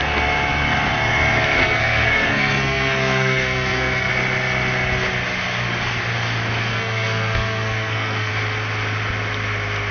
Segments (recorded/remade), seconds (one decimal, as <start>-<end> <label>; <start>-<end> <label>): 0.0-1.6 recorded; 1.6-4.1 remade; 4.1-6.7 recorded; 6.7-8.3 remade; 8.3-9.9 recorded